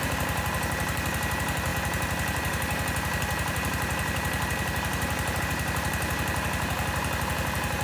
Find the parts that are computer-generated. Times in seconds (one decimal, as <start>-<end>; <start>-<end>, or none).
0.0-7.8